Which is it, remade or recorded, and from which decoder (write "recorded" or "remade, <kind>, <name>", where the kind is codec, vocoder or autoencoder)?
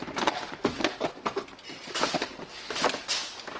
recorded